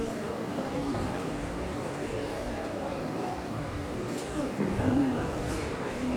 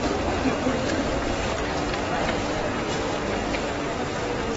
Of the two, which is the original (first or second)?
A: second